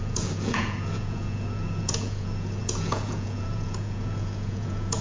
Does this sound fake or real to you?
fake